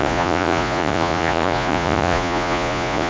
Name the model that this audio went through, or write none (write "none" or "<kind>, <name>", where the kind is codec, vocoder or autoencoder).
vocoder, Vocos